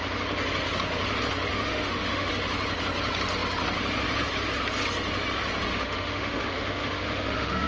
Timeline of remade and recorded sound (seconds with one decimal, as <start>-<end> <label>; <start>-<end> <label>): 0.0-1.5 recorded; 1.5-2.3 remade; 2.3-5.7 recorded; 5.7-7.7 remade